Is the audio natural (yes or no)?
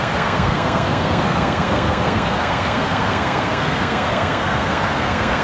no